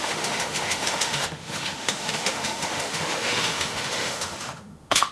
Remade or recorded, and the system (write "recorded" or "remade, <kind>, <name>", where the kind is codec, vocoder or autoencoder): remade, autoencoder, DAC-VAE